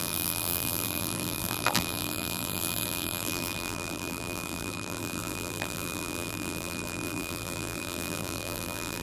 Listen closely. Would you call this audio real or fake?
fake